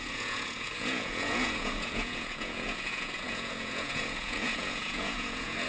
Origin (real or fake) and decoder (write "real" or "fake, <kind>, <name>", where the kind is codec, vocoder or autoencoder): fake, vocoder, Vocos